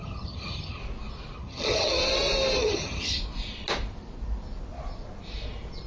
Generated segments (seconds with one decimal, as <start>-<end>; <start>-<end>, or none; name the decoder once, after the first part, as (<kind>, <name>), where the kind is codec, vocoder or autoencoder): 0.0-0.8 (vocoder, HiFi-GAN); 1.4-2.0; 2.6-3.2